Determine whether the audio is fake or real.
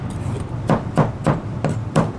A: fake